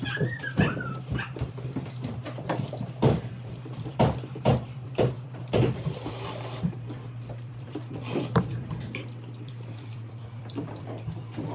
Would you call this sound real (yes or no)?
no